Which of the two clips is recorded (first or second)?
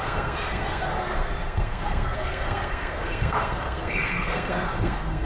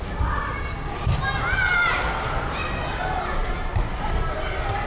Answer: second